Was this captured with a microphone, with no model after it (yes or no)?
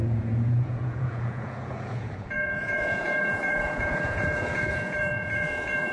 no